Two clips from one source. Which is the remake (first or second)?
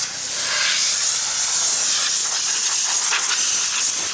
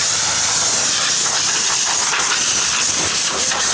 second